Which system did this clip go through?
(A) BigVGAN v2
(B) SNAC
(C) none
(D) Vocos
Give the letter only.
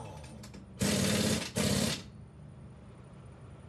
C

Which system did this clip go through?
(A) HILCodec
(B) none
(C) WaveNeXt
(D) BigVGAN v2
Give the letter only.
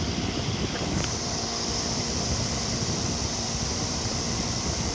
D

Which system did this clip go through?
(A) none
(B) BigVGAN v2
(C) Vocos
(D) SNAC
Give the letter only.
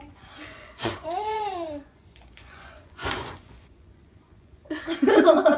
C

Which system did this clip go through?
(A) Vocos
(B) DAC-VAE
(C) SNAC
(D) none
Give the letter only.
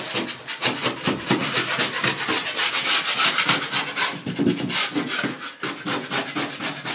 D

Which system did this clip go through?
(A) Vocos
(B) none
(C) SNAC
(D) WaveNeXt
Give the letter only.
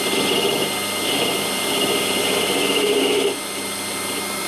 B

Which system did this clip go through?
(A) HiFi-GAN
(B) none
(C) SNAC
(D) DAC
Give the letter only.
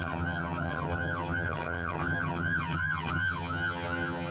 A